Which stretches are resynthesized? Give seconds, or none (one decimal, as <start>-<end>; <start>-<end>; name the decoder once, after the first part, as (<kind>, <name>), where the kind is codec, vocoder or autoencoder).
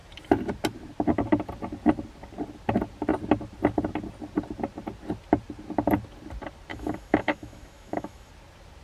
6.7-8.3 (autoencoder, DAC-VAE)